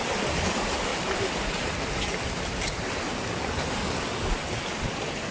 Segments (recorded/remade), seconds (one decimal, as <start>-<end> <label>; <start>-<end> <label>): 0.0-5.3 recorded